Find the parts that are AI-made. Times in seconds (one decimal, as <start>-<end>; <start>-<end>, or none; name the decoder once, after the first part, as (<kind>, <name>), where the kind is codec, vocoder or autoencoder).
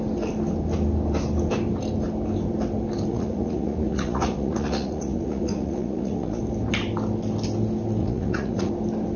3.1-6.4 (vocoder, Vocos); 8.0-8.7